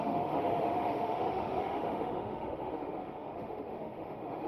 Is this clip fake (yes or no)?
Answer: yes